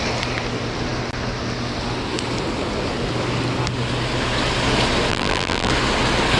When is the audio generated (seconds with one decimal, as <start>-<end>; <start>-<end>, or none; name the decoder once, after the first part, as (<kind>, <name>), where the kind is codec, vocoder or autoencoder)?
5.1-5.7 (vocoder, BigVGAN v2)